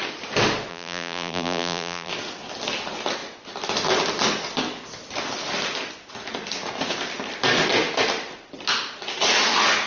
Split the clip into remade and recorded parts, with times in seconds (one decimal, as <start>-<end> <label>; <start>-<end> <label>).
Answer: 0.0-0.7 recorded; 0.7-2.1 remade; 2.1-9.9 recorded